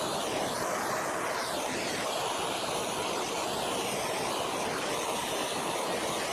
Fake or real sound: real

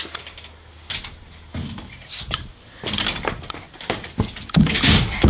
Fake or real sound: real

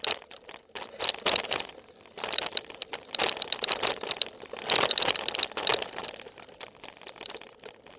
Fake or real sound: real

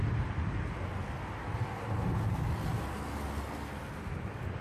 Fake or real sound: real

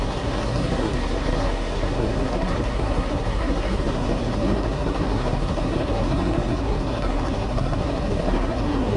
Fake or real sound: fake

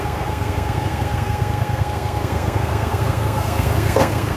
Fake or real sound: fake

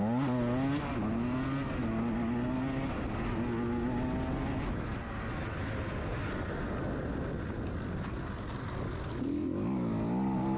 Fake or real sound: real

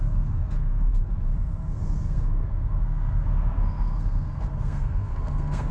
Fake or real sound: fake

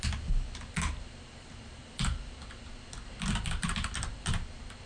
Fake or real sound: real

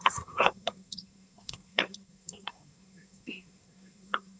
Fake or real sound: fake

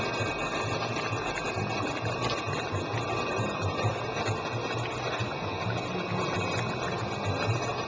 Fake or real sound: real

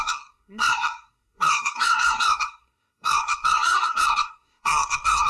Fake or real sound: fake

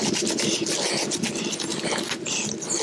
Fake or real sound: real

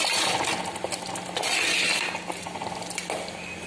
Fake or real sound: real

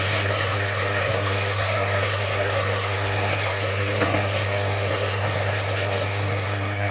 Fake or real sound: fake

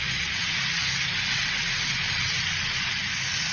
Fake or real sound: real